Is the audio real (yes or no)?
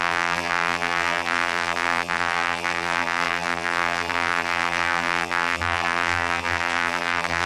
no